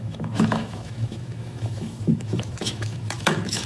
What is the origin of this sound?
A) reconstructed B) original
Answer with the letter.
A